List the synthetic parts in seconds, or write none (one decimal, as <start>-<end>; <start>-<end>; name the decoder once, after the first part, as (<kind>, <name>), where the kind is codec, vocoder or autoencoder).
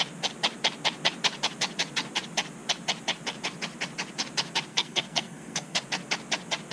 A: 4.7-5.8 (codec, SNAC)